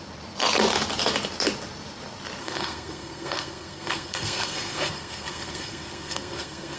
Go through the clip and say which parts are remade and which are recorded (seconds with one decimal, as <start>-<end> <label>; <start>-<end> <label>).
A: 0.0-2.4 recorded; 2.4-6.8 remade